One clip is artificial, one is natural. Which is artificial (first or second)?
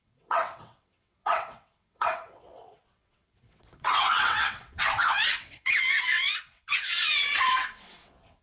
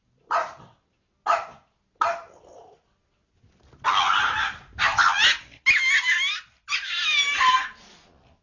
first